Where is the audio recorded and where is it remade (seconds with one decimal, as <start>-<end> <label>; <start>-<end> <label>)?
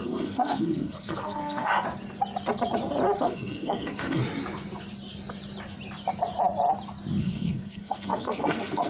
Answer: 0.0-1.7 remade; 1.7-3.2 recorded; 3.2-4.2 remade; 4.2-7.2 recorded; 7.2-8.9 remade